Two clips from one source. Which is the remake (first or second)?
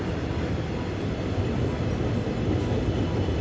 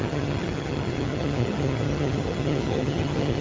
second